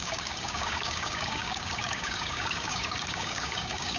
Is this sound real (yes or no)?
no